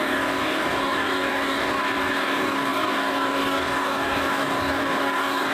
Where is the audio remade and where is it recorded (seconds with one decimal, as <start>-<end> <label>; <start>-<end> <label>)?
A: 0.0-5.5 remade